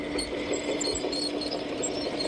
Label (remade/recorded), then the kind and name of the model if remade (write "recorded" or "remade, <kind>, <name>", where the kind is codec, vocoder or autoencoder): recorded